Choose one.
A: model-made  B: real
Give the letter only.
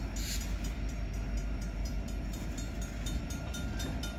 B